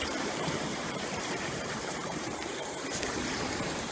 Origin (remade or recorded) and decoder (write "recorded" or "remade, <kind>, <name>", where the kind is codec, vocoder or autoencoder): remade, vocoder, BigVGAN v2